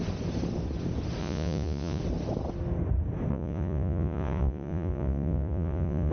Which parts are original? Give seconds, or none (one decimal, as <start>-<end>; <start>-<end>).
0.0-1.2; 2.0-3.3